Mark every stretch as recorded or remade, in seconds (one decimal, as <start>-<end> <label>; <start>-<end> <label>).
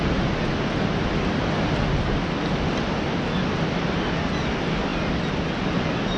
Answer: 0.0-6.2 recorded